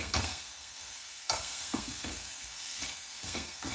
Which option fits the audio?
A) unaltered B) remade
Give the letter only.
B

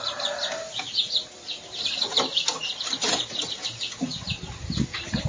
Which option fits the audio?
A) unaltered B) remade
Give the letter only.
A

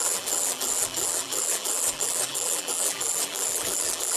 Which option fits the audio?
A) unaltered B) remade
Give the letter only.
B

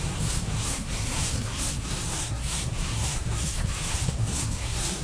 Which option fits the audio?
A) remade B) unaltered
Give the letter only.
A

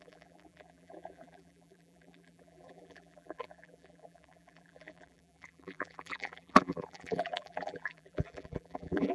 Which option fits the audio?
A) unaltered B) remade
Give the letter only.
B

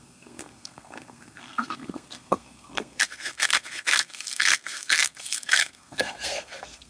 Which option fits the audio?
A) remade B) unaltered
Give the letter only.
A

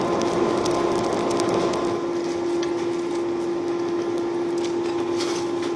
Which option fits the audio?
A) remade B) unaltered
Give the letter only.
B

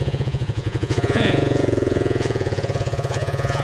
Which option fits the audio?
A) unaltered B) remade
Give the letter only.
B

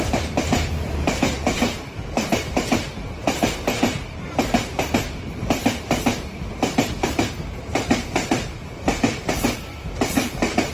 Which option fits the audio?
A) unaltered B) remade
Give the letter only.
B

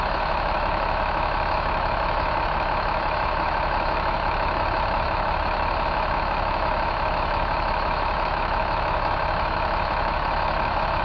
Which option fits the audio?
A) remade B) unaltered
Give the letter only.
A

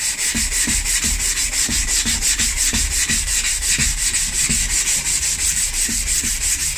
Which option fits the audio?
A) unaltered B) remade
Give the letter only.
B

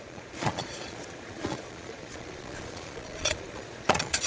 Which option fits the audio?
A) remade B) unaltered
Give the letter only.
A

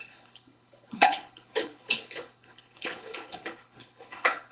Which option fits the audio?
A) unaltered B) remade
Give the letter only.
B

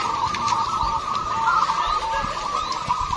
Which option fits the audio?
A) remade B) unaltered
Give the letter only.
B